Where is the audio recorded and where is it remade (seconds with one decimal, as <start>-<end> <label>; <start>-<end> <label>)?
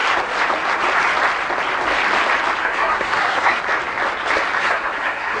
0.0-2.6 recorded; 2.6-3.6 remade; 3.6-4.6 recorded; 4.6-5.4 remade